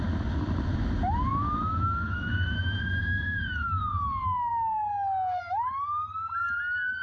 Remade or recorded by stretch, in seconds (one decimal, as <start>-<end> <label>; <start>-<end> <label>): 0.0-1.3 recorded; 1.3-3.8 remade; 3.8-7.0 recorded